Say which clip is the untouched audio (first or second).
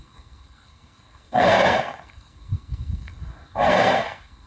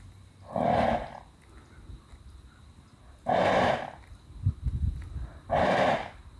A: second